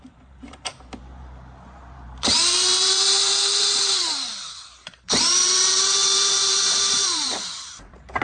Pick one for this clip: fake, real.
fake